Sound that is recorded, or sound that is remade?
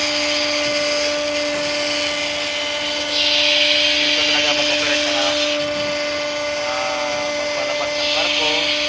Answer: recorded